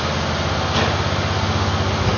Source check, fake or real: real